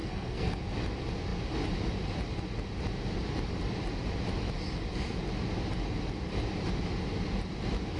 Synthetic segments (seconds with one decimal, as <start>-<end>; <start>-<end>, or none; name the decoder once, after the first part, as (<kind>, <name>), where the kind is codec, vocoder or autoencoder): 0.0-0.6 (codec, SNAC)